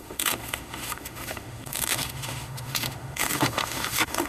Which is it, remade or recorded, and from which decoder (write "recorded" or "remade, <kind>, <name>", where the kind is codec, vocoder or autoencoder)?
remade, autoencoder, DAC-VAE